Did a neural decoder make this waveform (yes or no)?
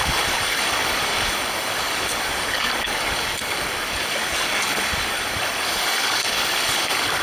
yes